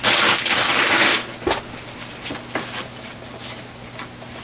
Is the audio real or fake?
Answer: real